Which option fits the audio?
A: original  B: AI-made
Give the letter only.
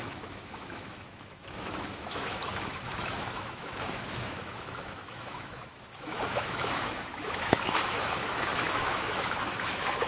B